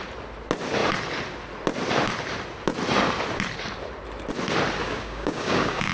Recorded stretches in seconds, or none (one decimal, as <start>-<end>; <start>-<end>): 0.0-4.8